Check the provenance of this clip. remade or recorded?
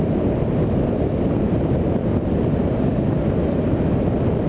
recorded